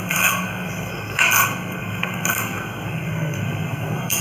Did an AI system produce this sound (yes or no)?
yes